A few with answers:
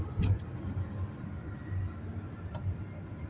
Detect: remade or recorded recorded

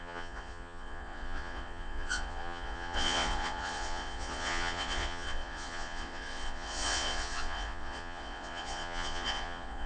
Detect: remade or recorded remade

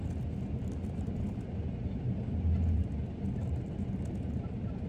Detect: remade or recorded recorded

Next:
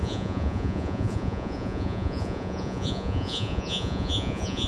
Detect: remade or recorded remade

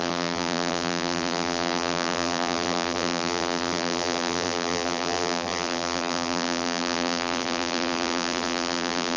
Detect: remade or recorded remade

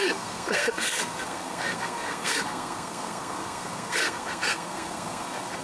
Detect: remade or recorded remade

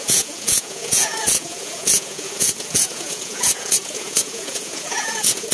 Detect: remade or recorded remade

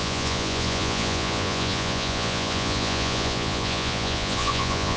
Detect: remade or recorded remade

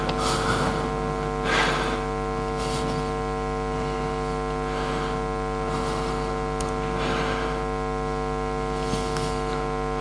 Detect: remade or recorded recorded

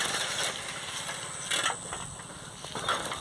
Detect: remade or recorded recorded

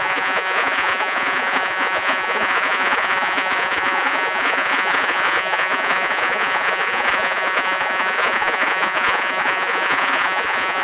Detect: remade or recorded remade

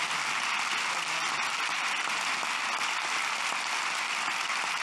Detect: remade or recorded recorded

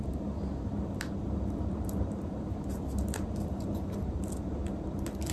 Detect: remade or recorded recorded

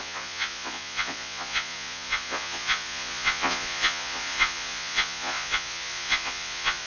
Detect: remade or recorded remade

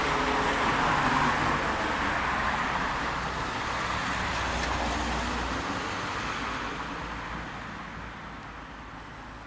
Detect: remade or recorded recorded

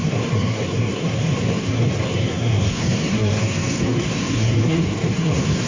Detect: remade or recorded remade